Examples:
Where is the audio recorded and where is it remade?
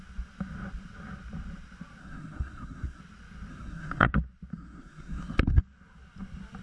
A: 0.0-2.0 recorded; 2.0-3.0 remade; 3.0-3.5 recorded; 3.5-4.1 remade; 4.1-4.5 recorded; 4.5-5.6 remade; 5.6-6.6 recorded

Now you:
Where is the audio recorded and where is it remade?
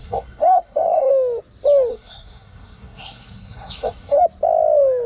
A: 0.0-1.1 remade; 1.1-1.9 recorded; 1.9-4.2 remade; 4.2-5.1 recorded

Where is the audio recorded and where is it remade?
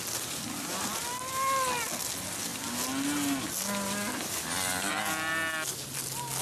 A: 0.0-6.4 recorded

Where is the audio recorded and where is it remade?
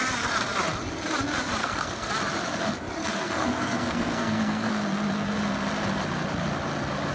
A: 0.0-1.6 recorded; 1.6-2.1 remade; 2.1-3.0 recorded; 3.0-4.7 remade; 4.7-7.1 recorded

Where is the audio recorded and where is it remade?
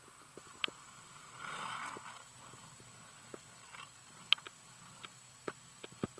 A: 0.0-6.2 recorded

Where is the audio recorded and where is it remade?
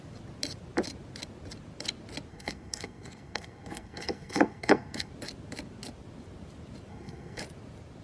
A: 0.0-2.3 recorded; 2.3-5.1 remade; 5.1-6.9 recorded; 6.9-7.4 remade; 7.4-8.0 recorded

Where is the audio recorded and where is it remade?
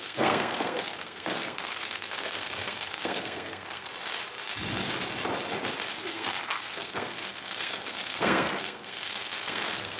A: 0.0-3.9 remade; 3.9-6.1 recorded; 6.1-10.0 remade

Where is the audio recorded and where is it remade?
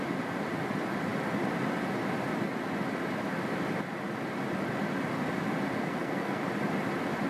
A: 0.0-5.8 recorded; 5.8-6.4 remade; 6.4-7.3 recorded